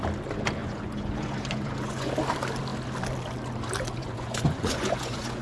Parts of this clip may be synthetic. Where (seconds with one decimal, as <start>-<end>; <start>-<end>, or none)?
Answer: 0.6-2.1; 4.0-5.4